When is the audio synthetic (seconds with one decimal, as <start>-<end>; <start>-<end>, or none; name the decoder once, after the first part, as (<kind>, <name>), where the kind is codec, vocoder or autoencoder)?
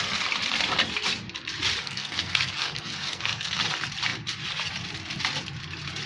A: 1.8-3.6 (codec, SNAC)